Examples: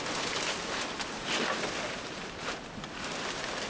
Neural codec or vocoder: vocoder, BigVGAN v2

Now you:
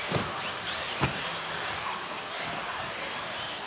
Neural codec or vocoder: vocoder, BigVGAN v2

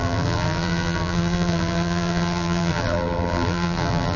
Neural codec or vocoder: vocoder, BigVGAN v2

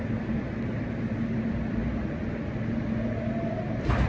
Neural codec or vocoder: none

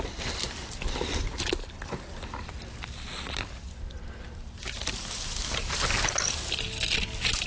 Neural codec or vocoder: none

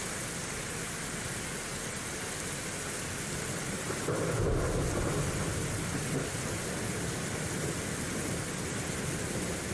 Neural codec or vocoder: none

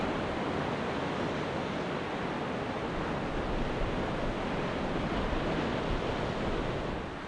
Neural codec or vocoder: none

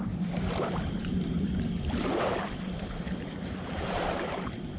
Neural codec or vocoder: vocoder, BigVGAN v2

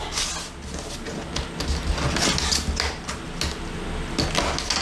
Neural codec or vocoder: none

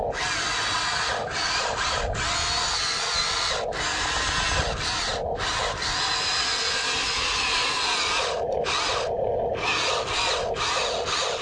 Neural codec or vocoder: none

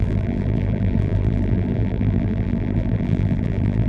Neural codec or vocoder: vocoder, BigVGAN v2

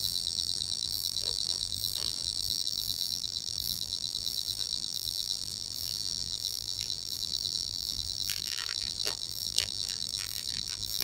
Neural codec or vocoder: vocoder, BigVGAN v2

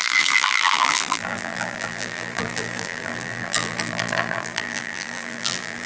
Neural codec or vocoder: vocoder, BigVGAN v2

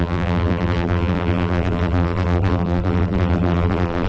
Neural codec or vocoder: vocoder, BigVGAN v2